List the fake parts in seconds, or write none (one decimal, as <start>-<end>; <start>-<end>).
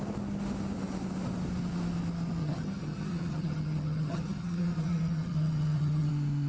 2.4-6.1